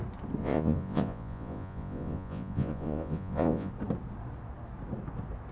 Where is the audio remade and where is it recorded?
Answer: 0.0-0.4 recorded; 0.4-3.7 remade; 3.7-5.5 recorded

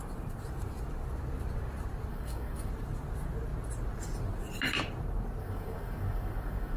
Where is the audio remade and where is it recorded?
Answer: 0.0-2.1 recorded; 2.1-2.7 remade; 2.7-5.4 recorded; 5.4-6.8 remade